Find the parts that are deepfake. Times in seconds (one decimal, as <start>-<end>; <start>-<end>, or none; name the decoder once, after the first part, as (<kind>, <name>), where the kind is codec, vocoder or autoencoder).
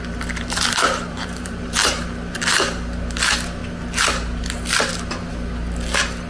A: 1.1-2.0 (vocoder, BigVGAN v2)